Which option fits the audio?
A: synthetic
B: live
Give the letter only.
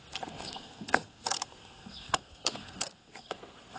A